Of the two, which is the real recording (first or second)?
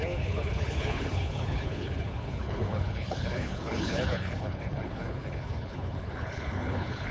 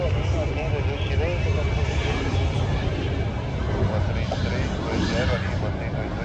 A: second